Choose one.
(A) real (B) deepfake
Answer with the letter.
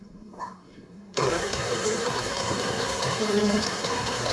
B